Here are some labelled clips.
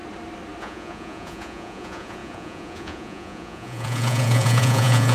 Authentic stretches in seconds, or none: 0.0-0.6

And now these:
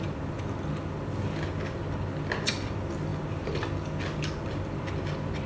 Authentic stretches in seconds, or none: 0.0-5.5

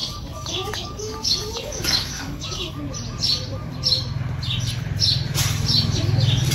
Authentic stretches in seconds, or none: 2.7-6.5

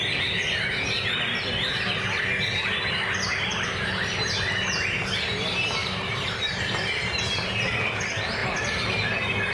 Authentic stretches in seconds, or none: 0.0-3.3; 4.5-5.8; 7.2-8.4

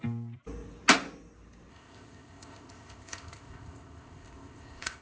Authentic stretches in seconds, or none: 0.0-1.7

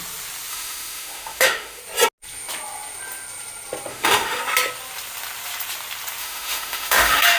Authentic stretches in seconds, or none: 0.0-0.5; 1.8-3.9; 4.4-6.2

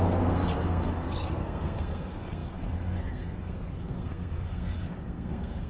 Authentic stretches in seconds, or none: none

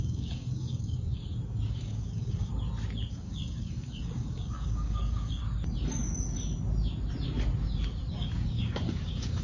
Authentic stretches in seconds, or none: 2.5-3.1; 5.4-8.1